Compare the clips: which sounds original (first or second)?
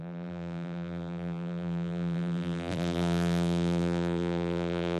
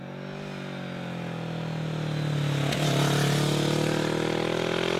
second